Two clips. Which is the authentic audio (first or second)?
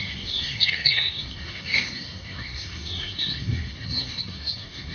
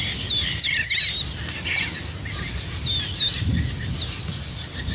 second